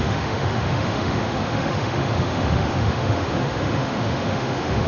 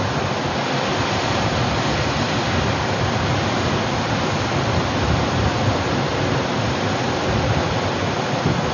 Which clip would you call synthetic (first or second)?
first